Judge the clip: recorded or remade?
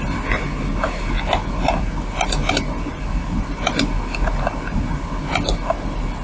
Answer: recorded